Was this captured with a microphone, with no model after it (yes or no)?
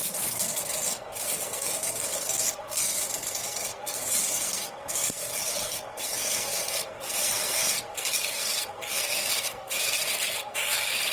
no